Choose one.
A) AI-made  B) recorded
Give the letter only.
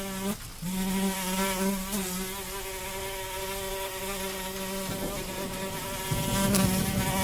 B